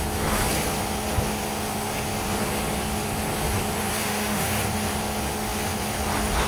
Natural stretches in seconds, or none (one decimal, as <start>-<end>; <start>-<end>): 0.0-4.0; 4.6-6.5